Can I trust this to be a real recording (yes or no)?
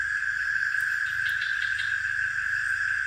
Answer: yes